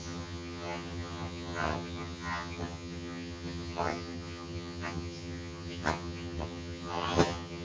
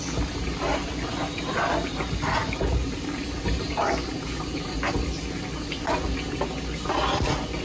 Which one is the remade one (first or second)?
first